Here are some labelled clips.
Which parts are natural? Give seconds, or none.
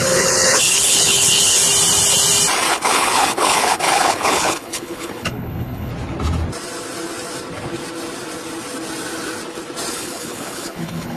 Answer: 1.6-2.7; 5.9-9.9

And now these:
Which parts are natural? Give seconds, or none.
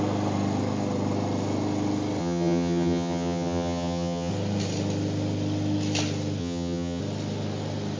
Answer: 0.0-2.2; 4.3-6.4; 7.0-8.0